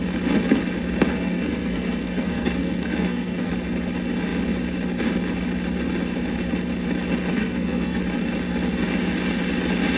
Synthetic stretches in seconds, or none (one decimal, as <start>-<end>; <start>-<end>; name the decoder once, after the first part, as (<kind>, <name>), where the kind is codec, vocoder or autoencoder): 1.1-3.5 (codec, SNAC); 7.3-8.0